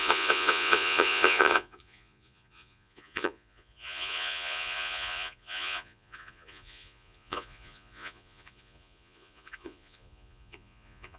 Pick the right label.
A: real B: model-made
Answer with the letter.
B